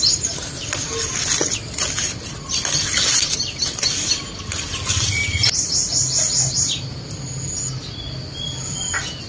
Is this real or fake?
real